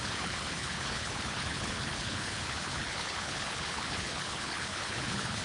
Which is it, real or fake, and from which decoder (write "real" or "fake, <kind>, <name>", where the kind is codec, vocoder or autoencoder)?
fake, codec, HILCodec